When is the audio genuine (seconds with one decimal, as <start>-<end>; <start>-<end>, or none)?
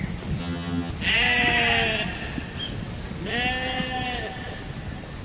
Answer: 0.0-0.4; 0.9-5.2